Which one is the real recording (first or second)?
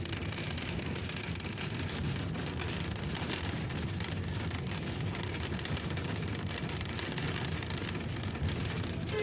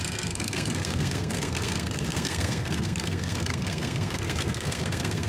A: first